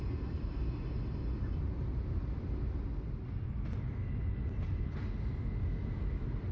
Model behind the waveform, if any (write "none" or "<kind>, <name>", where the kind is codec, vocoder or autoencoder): none